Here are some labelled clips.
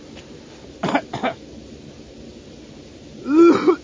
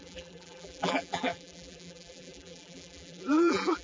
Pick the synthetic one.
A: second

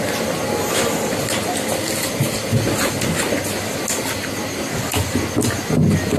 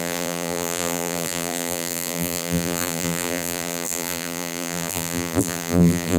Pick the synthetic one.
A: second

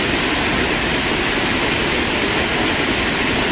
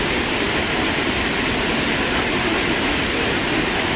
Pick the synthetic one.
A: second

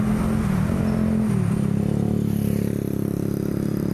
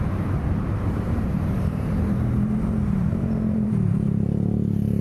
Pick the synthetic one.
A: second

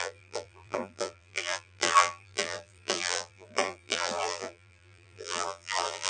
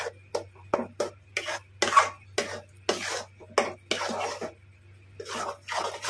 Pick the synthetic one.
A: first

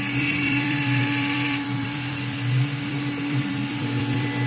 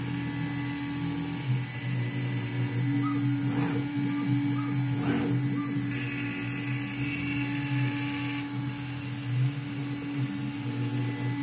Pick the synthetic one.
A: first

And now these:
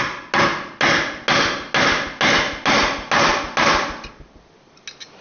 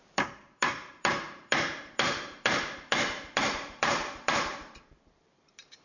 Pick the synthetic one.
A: second